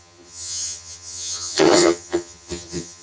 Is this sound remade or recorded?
remade